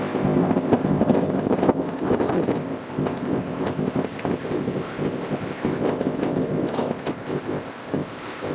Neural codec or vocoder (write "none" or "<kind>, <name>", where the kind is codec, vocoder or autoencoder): codec, ZipCodec